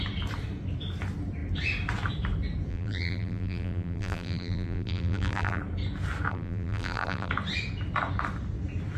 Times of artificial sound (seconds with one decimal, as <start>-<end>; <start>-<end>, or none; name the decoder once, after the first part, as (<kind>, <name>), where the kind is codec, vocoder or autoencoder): 2.7-5.6 (vocoder, BigVGAN v2); 6.3-7.3